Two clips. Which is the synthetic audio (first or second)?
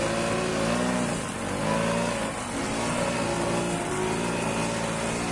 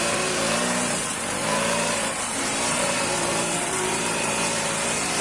second